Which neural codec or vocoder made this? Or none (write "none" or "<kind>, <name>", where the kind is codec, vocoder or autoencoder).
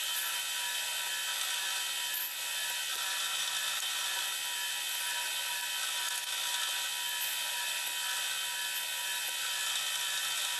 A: none